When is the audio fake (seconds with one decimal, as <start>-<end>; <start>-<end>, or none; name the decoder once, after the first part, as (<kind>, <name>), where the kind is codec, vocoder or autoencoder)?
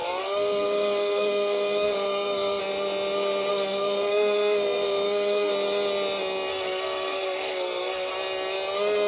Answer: 0.0-2.6 (codec, SNAC); 3.5-5.5; 6.5-8.1